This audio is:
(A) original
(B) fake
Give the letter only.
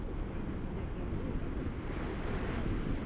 B